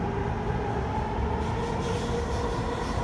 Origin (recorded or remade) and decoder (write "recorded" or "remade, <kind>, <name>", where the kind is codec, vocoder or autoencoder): recorded